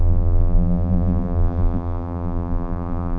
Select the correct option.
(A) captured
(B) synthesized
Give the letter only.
B